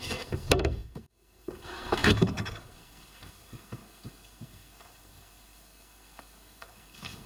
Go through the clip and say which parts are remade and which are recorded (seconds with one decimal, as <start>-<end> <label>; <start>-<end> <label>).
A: 0.0-7.3 remade